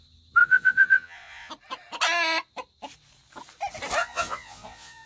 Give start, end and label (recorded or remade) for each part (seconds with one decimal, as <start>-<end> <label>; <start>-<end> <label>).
0.0-0.4 recorded; 0.4-1.5 remade; 1.5-4.0 recorded; 4.0-5.1 remade